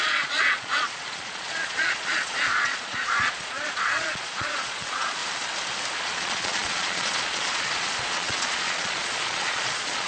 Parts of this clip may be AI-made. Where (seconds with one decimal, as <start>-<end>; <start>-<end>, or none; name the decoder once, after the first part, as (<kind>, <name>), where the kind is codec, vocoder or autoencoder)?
0.0-5.2 (vocoder, Vocos); 6.0-10.1